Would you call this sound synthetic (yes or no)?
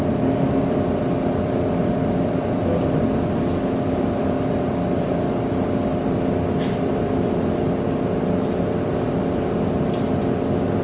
no